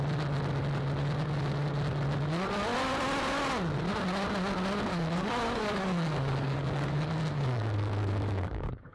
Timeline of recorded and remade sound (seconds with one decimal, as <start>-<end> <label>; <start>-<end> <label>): 0.0-4.9 recorded; 4.9-8.9 remade